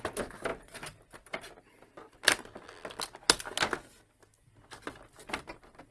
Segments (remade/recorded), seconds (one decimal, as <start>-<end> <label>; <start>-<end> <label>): 0.0-5.9 recorded